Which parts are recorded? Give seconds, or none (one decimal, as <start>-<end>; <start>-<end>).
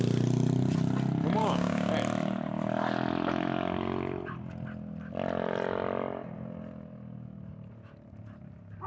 0.0-1.4; 1.9-8.9